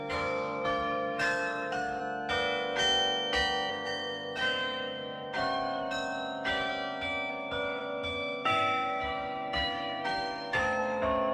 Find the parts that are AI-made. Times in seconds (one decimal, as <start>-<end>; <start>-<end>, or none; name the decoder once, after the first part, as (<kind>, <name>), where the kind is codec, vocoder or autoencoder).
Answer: 0.0-2.0 (autoencoder, DAC-VAE); 3.7-6.7; 7.3-11.3